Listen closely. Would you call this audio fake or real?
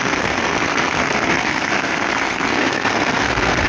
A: fake